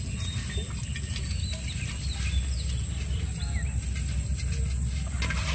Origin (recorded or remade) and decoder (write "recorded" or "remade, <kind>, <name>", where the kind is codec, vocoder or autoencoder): recorded